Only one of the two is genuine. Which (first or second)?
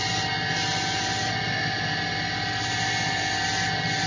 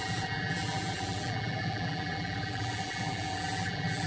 first